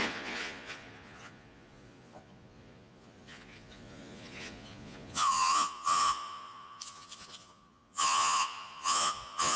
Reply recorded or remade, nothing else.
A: remade